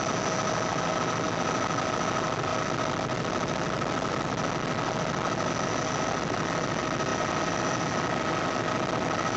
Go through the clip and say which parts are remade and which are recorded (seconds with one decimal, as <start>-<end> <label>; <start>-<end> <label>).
0.0-9.4 recorded